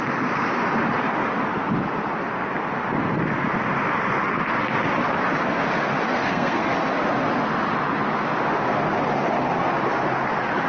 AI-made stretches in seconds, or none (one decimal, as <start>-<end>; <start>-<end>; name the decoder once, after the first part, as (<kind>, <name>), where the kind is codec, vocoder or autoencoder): 6.0-6.7 (codec, SNAC)